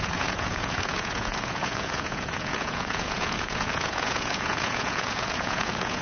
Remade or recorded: remade